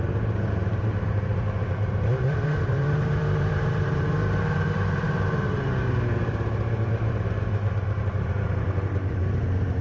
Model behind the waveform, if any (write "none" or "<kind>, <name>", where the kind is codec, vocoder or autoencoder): vocoder, BigVGAN v2